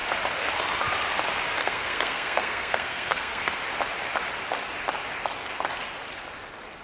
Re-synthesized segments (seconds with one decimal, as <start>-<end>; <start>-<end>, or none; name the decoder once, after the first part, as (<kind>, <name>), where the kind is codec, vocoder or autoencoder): 1.6-3.6 (codec, SNAC)